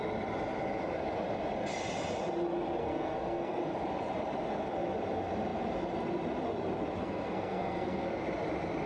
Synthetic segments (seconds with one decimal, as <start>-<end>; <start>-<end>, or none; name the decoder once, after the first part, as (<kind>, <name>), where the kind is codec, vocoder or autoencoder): 2.8-3.6 (codec, SNAC); 7.0-8.0